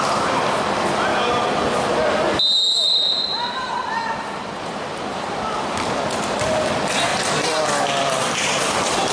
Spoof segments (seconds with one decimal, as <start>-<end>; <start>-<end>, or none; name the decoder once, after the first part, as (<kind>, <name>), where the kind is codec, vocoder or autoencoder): 0.0-1.1 (vocoder, BigVGAN v2); 2.8-9.1